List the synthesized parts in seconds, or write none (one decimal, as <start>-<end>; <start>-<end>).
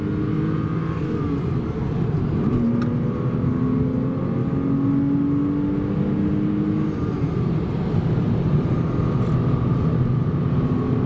none